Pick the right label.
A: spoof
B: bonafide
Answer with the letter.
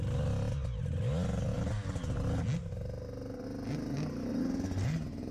B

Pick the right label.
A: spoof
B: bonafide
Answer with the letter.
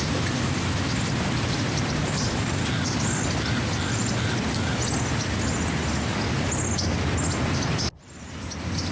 B